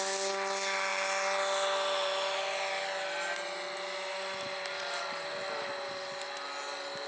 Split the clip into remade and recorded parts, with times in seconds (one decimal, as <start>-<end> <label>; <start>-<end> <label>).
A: 0.0-7.1 recorded